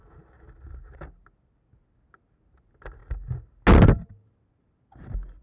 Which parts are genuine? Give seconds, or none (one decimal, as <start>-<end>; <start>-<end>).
0.0-5.4